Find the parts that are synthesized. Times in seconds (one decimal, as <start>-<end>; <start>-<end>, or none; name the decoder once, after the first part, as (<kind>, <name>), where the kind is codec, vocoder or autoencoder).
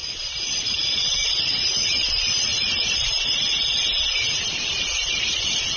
none